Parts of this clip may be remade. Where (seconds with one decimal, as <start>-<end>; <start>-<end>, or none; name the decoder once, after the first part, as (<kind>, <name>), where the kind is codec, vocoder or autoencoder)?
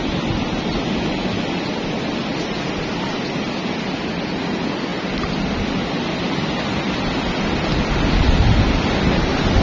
none